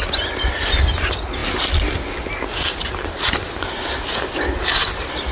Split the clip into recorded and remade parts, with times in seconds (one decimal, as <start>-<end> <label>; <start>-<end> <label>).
0.0-5.3 recorded